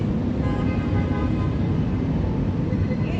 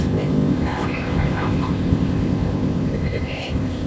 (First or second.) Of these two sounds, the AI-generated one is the second